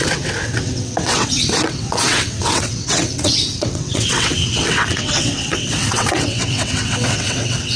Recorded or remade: remade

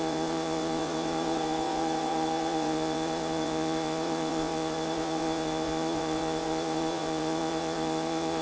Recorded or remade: remade